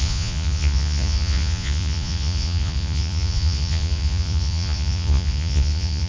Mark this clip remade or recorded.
remade